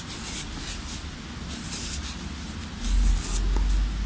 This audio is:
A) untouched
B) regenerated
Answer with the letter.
A